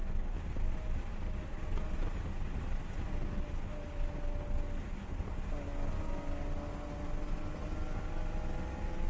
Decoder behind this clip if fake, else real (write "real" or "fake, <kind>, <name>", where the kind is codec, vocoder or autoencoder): real